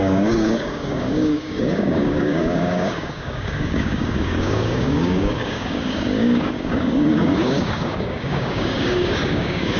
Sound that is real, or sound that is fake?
fake